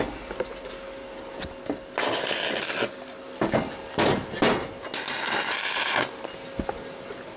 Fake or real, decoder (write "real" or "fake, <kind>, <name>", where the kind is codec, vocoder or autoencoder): real